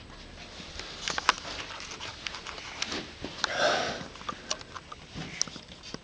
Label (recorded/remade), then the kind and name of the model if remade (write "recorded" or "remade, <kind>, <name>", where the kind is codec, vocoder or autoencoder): recorded